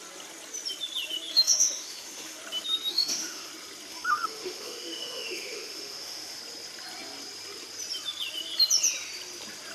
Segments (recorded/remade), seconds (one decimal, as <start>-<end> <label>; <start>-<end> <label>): 0.0-1.3 recorded; 1.3-2.4 remade; 2.4-2.9 recorded; 2.9-3.5 remade; 3.5-3.9 recorded; 3.9-6.4 remade; 6.4-9.7 recorded